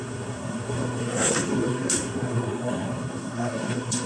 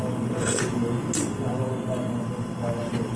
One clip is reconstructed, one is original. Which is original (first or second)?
second